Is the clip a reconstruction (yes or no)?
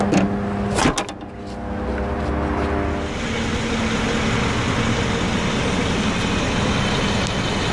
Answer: no